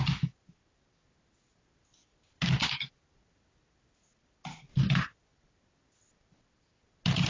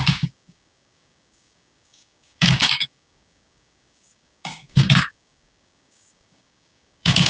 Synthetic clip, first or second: second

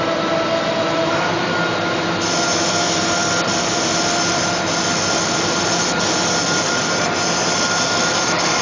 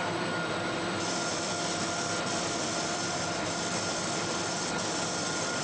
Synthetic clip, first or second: second